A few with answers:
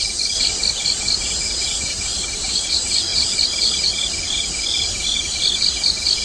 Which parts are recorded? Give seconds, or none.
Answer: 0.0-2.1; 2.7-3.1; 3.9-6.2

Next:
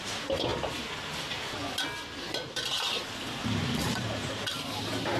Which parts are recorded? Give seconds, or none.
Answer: 0.5-3.6

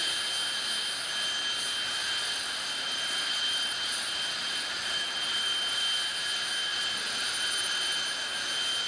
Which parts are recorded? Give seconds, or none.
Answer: 0.0-2.0; 5.8-6.7; 8.0-8.9

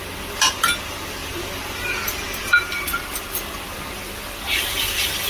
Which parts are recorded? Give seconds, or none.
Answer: 0.0-5.3

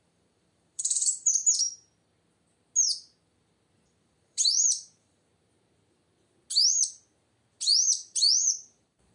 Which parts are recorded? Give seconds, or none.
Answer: 1.3-4.0; 5.3-7.6

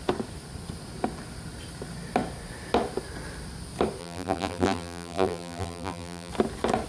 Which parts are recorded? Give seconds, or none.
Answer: 0.0-4.0; 6.3-6.9

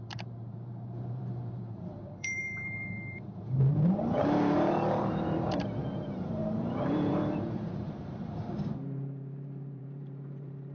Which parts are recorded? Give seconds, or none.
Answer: none